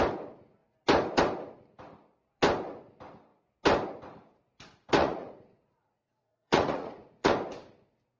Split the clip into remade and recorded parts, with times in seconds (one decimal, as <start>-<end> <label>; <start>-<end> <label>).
0.0-5.0 recorded; 5.0-7.3 remade; 7.3-8.2 recorded